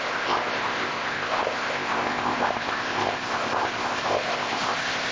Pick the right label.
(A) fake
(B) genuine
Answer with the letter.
A